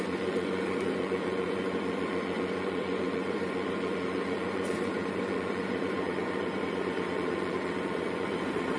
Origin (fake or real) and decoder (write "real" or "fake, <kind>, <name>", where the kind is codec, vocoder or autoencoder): fake, vocoder, Vocos